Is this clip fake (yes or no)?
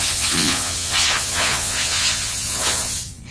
yes